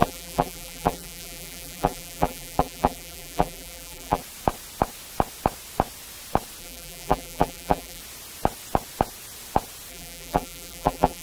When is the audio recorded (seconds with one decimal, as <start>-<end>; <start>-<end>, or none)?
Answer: 4.2-6.6; 8.0-9.9